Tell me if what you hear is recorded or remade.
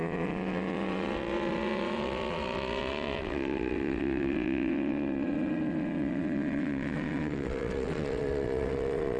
remade